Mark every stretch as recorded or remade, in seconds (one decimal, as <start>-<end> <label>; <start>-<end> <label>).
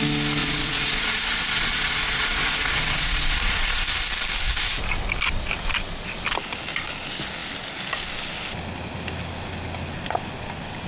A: 0.0-0.4 recorded; 0.4-3.8 remade; 3.8-10.9 recorded